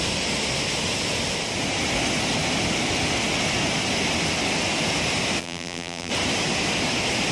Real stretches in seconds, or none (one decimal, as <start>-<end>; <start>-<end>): 0.0-5.4; 6.1-7.3